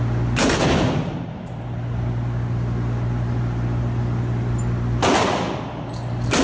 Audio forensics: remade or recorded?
recorded